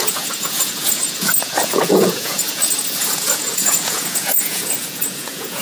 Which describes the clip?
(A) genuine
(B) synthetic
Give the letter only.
B